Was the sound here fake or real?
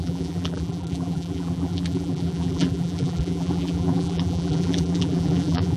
fake